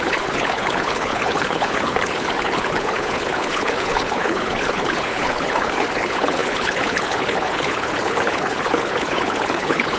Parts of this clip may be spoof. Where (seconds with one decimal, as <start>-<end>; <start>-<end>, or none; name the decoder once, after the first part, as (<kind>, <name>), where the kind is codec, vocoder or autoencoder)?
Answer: 0.0-10.0 (codec, HILCodec)

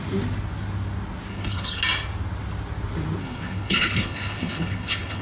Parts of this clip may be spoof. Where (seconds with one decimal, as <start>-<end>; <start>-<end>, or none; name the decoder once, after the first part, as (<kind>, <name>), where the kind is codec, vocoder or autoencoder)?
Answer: 1.3-1.8 (codec, HILCodec); 3.2-5.2

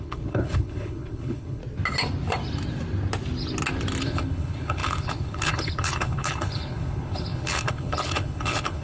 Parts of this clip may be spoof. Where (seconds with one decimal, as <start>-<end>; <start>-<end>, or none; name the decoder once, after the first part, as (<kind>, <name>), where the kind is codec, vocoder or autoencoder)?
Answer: 0.0-1.6 (codec, HILCodec); 4.0-8.8